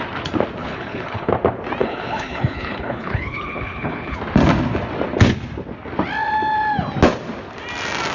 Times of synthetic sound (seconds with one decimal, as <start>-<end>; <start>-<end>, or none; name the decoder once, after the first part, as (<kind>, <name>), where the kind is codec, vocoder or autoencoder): 0.6-1.3 (codec, HILCodec); 1.8-4.2